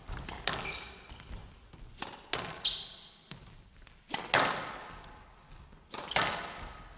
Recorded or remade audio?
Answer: recorded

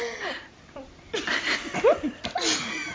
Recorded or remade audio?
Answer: recorded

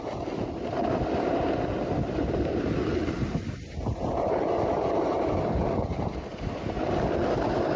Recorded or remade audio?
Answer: recorded